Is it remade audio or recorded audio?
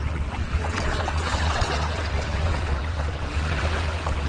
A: remade